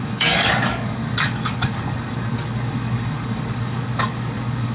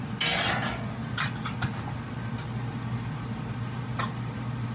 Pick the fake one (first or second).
first